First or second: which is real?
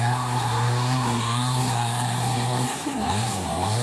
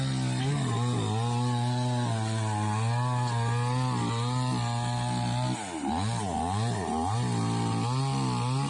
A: second